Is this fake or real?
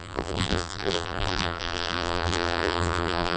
fake